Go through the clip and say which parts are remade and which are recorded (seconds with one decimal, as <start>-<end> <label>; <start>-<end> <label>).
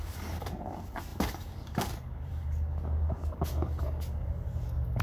0.0-5.0 remade